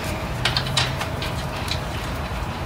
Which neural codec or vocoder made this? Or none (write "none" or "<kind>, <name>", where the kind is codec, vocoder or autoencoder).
vocoder, BigVGAN v2